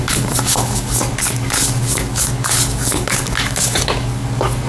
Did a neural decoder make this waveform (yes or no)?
yes